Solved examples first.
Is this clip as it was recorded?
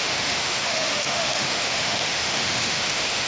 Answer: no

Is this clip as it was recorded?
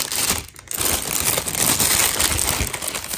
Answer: yes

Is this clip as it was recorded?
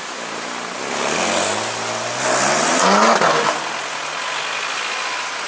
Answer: yes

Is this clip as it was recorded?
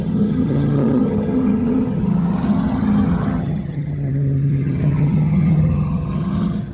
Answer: no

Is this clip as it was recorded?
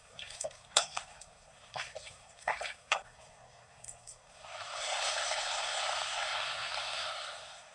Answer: no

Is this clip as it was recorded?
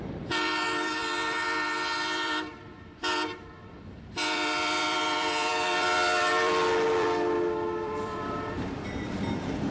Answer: no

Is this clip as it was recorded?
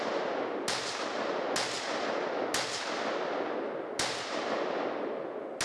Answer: yes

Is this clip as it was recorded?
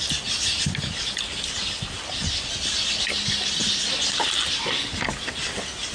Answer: yes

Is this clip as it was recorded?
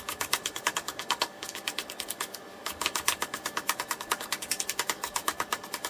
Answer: no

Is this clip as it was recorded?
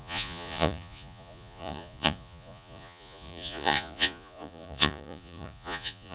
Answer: no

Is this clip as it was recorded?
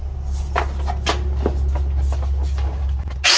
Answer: yes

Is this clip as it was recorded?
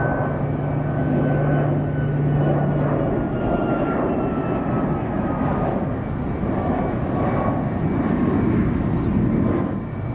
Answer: yes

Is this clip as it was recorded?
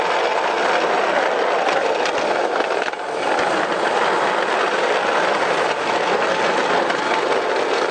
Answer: yes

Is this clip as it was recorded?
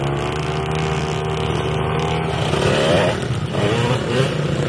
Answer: yes